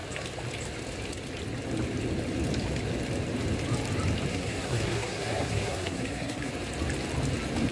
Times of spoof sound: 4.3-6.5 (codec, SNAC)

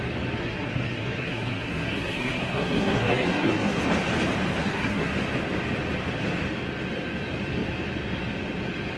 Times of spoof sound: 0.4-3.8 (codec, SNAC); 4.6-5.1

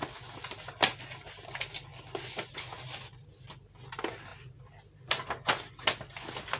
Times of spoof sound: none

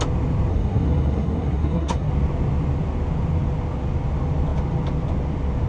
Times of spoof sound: 0.5-2.1 (codec, SNAC)